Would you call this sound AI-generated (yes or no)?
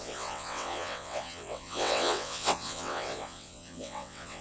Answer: yes